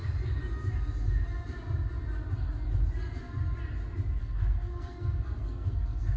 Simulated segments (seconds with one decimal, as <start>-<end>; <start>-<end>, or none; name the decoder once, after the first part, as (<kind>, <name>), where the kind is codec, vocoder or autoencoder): 4.2-6.2 (codec, SNAC)